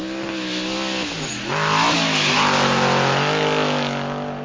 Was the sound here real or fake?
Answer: real